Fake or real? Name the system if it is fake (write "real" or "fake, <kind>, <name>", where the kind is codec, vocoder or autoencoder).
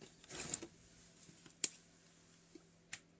real